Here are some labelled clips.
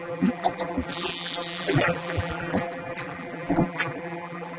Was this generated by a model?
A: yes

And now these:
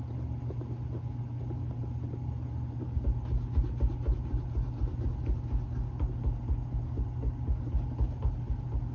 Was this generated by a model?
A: no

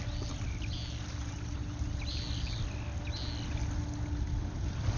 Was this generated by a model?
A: no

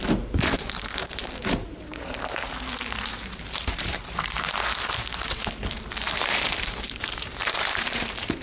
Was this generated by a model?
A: yes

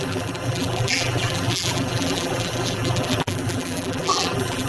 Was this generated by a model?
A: yes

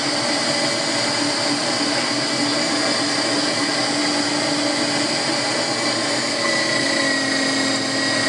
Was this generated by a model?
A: no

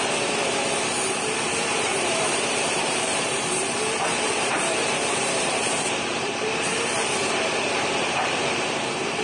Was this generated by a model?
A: yes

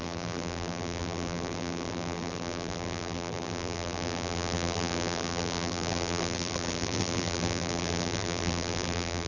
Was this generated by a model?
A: yes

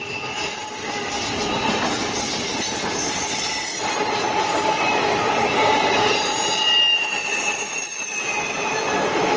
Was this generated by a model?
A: no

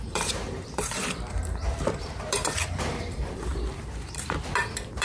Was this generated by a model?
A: yes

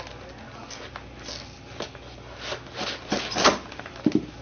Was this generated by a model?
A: no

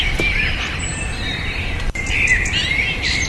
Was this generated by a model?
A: no